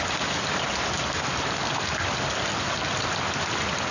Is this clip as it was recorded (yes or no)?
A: yes